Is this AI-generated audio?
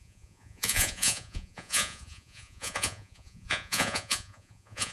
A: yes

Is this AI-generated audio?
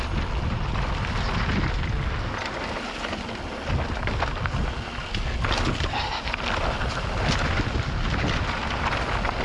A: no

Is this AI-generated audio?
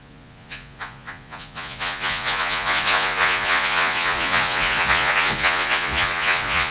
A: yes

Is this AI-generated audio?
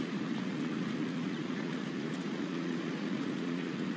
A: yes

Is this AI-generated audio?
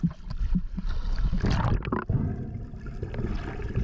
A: no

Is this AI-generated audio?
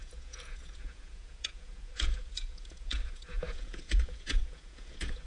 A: yes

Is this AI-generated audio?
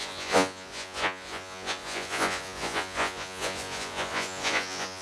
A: yes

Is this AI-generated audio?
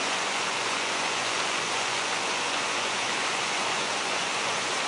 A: yes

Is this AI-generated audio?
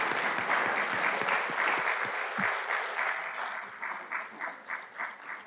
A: no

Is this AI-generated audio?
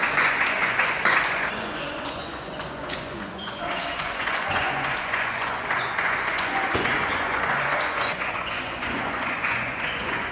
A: yes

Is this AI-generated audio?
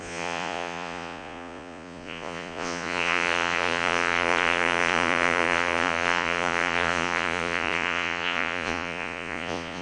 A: yes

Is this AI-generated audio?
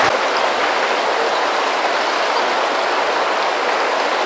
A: no